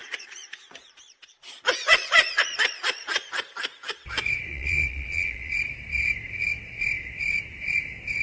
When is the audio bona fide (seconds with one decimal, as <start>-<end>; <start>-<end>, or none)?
3.3-4.5; 5.5-8.2